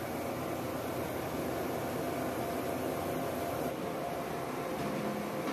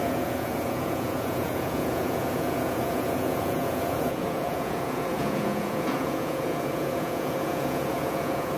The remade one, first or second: second